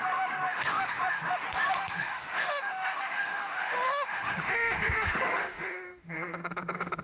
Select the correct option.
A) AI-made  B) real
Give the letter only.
A